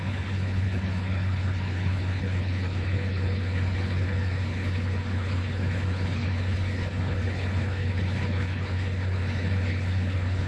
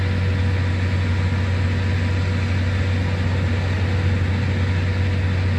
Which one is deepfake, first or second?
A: first